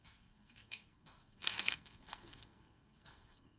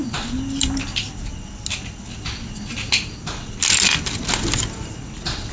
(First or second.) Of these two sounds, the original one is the second